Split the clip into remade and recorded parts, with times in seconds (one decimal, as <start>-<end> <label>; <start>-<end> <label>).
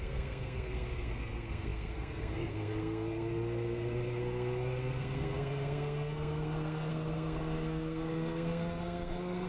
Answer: 0.0-9.5 remade